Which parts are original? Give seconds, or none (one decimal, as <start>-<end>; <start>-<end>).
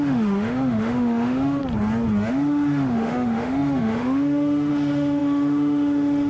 1.6-2.3